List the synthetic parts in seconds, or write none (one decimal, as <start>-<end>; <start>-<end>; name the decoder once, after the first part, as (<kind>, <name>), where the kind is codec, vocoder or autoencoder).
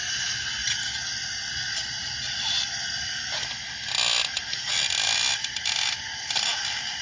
none